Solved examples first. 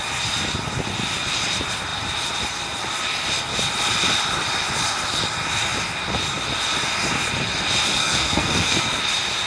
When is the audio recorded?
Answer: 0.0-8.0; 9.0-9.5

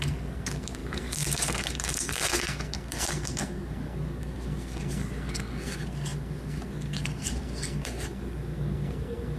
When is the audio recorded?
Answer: none